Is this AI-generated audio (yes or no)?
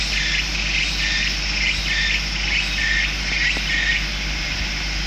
no